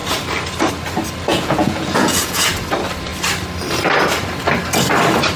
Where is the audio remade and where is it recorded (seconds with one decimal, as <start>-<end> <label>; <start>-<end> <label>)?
0.0-1.3 recorded; 1.3-2.5 remade; 2.5-5.4 recorded